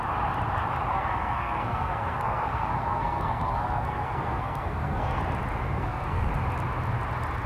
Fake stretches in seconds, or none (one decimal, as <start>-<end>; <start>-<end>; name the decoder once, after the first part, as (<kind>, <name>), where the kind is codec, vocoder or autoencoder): 0.9-5.2 (codec, SNAC); 5.7-6.3